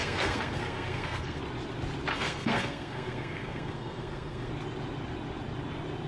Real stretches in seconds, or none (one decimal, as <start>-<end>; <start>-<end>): 1.4-2.1; 4.5-6.1